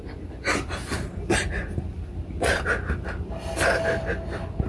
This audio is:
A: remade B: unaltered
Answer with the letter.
B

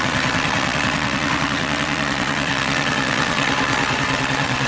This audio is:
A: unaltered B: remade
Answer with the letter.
B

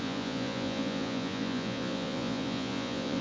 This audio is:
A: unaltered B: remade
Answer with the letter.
B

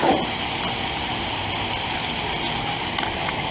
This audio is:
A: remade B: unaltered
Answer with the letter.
B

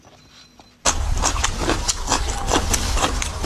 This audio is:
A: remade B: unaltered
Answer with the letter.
A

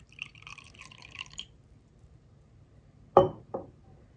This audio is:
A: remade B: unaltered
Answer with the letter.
A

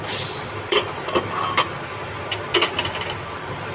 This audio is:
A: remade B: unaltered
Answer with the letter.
B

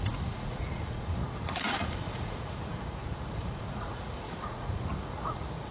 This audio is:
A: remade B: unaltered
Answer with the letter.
A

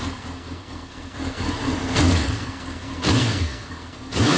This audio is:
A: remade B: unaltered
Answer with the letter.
A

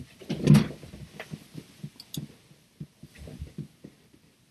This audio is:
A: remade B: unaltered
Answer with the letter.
B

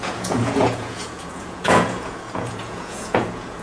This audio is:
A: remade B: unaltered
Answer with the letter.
A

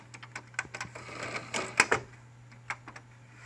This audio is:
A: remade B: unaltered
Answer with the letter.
B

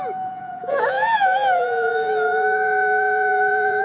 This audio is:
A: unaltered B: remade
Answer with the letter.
B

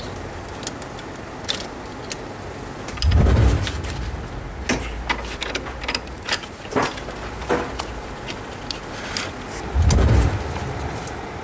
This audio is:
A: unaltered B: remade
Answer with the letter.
A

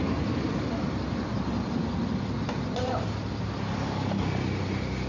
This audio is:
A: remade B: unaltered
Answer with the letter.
B